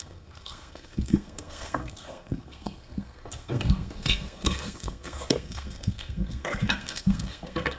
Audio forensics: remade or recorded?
remade